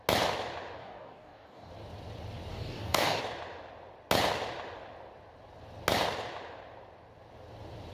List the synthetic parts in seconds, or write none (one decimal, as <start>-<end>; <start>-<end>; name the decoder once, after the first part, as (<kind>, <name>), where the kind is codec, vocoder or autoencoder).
0.8-1.7 (codec, DAC); 2.5-3.2